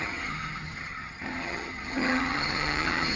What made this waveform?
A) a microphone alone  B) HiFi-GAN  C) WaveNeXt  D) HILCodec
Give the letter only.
B